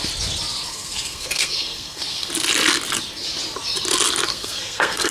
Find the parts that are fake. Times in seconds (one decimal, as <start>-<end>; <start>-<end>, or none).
0.7-2.3; 4.3-5.1